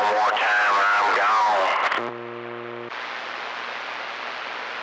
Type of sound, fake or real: real